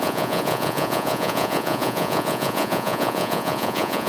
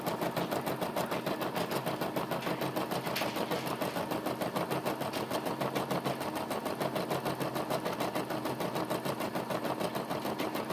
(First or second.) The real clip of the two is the second